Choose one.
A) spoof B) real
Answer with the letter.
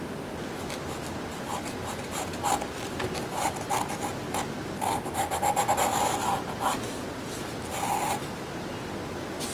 B